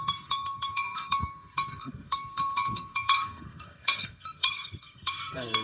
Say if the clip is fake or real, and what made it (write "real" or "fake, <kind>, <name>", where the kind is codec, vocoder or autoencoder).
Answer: fake, codec, SNAC